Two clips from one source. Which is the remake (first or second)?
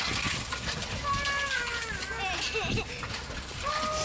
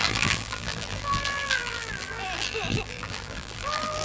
second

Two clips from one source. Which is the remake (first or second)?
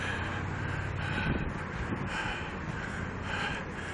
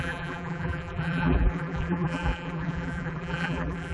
second